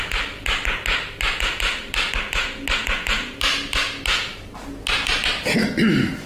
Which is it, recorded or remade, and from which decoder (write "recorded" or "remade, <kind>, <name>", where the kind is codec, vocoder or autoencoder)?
recorded